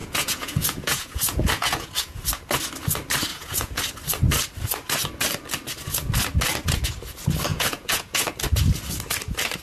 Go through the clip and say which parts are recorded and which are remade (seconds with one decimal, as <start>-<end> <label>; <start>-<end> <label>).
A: 0.0-2.2 remade; 2.2-3.3 recorded; 3.3-3.8 remade; 3.8-7.5 recorded; 7.5-8.3 remade; 8.3-9.6 recorded